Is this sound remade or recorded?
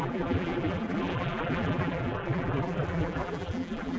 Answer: remade